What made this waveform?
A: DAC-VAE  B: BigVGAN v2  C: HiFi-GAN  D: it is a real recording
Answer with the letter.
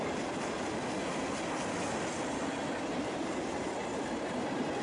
D